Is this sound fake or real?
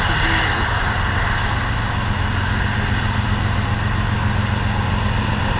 real